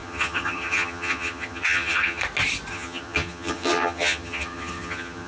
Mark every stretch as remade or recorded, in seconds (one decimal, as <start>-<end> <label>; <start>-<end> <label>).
0.0-2.2 remade; 2.2-2.7 recorded; 2.7-5.3 remade